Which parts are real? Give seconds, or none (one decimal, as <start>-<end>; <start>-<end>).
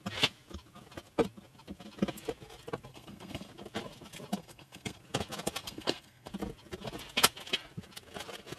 0.0-2.9; 3.5-4.4; 5.0-5.6; 6.3-8.6